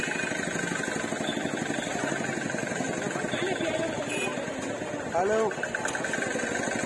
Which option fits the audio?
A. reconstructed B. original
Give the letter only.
B